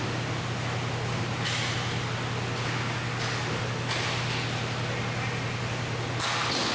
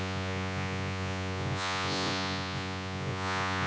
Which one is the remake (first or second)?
second